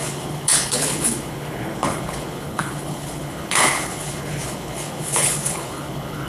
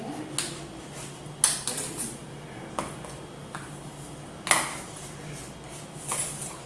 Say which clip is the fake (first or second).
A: first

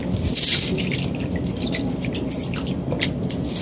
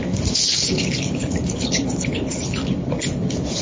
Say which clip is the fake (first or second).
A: second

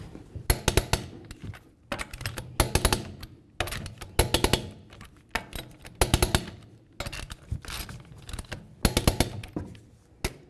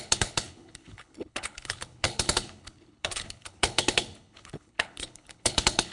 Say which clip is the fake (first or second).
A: second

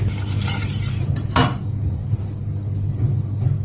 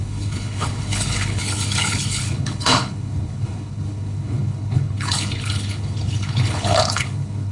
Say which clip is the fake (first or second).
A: second